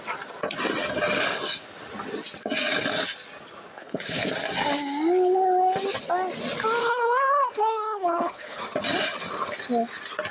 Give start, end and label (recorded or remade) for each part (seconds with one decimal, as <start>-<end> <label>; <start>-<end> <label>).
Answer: 0.0-3.8 recorded; 3.8-4.3 remade; 4.3-6.8 recorded; 6.8-8.6 remade; 8.6-10.3 recorded